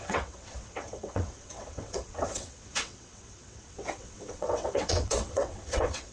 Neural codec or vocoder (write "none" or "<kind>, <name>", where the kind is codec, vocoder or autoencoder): vocoder, WaveNeXt